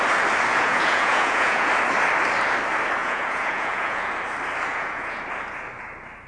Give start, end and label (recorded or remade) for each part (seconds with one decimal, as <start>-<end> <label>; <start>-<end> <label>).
0.0-0.5 recorded; 0.5-1.7 remade; 1.7-3.0 recorded; 3.0-4.1 remade; 4.1-4.7 recorded; 4.7-5.2 remade; 5.2-6.3 recorded